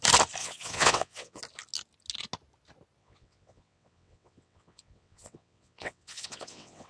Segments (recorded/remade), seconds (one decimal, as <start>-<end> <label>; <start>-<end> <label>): 0.0-0.4 recorded; 0.4-1.4 remade; 1.4-3.0 recorded; 3.0-6.9 remade